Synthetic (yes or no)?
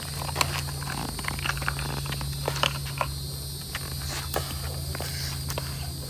no